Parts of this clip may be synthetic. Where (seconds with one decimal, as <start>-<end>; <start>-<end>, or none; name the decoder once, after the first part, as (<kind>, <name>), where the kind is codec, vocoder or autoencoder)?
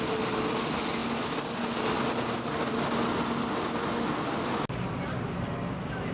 none